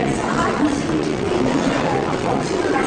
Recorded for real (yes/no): no